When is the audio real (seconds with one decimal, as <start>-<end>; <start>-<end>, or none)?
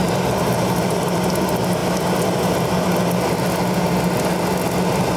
0.0-5.2